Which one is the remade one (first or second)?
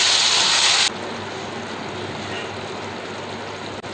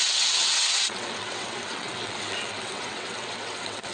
second